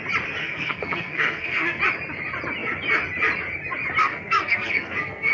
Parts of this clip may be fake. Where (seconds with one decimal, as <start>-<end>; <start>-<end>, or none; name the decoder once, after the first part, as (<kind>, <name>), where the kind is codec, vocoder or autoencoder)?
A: 0.4-1.8 (codec, SNAC); 4.0-5.3